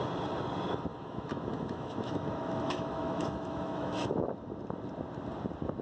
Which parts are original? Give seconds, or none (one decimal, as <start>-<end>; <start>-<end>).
0.0-0.9; 4.3-5.8